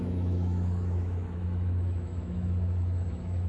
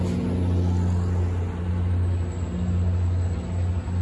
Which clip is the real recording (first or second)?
second